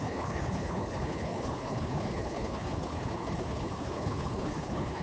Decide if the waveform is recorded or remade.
remade